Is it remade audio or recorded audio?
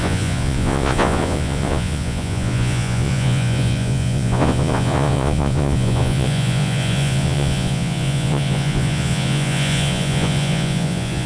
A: remade